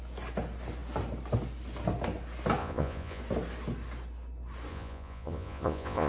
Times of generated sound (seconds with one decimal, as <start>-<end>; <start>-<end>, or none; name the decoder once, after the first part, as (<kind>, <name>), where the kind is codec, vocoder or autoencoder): 2.6-3.2 (vocoder, Vocos); 4.7-6.1